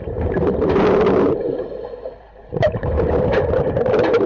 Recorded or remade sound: remade